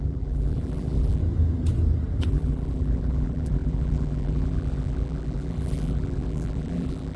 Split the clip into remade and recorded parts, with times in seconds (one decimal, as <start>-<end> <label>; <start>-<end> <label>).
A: 0.0-1.2 remade; 1.2-2.3 recorded; 2.3-7.2 remade